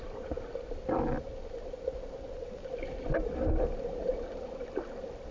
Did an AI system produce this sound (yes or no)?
no